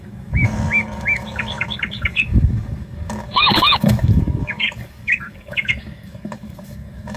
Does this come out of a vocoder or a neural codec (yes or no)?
yes